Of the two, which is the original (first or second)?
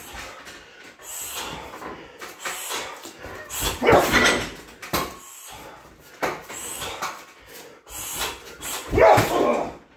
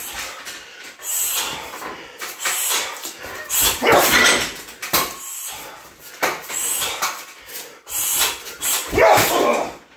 first